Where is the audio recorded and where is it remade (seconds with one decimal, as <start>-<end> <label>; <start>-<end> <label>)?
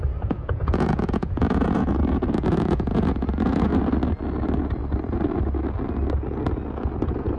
0.0-3.7 remade; 3.7-7.0 recorded; 7.0-7.4 remade